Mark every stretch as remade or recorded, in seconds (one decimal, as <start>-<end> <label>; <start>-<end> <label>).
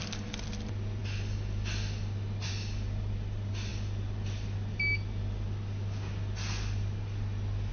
0.0-7.7 recorded